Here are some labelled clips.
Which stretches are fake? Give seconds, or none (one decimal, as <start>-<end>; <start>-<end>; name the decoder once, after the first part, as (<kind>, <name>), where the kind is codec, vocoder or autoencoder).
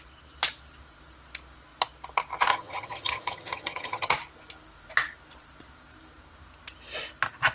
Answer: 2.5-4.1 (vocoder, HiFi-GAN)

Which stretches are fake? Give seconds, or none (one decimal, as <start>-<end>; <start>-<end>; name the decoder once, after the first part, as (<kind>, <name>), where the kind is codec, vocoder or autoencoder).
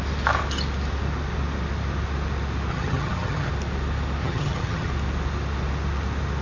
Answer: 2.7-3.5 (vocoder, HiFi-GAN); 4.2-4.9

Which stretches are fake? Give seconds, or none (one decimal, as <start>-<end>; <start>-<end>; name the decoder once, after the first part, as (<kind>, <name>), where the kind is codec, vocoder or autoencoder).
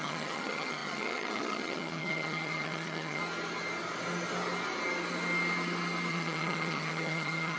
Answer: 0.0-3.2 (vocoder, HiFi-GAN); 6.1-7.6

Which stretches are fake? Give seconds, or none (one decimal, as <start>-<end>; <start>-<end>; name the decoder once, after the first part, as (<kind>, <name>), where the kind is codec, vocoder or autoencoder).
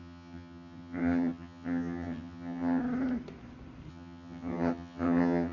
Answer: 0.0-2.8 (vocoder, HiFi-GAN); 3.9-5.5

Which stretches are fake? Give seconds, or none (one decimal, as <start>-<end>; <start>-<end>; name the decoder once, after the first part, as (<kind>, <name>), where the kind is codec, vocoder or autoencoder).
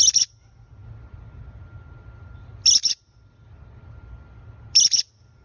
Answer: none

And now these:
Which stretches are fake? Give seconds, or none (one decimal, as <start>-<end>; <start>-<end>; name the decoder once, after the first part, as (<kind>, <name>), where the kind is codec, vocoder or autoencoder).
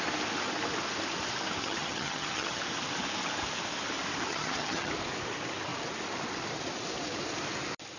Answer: 1.6-2.6 (vocoder, HiFi-GAN); 4.3-4.9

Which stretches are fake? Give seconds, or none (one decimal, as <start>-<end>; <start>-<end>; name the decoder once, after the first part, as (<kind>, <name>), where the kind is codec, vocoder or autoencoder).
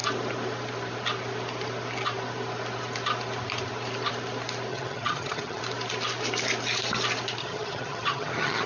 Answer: 4.7-5.6 (vocoder, HiFi-GAN); 7.4-8.7